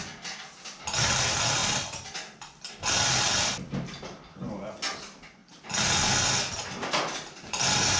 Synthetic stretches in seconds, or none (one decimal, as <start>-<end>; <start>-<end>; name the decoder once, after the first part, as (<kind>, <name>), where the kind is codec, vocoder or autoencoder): none